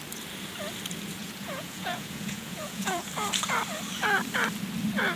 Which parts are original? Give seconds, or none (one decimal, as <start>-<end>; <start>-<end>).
0.0-1.2; 3.1-5.2